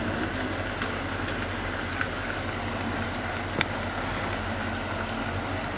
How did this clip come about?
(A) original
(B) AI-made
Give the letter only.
A